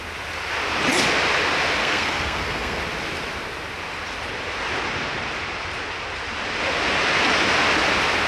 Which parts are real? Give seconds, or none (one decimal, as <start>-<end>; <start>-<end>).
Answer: 0.0-1.8; 2.8-8.3